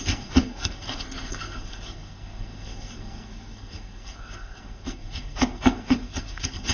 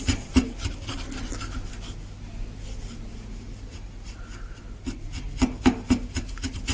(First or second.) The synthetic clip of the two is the first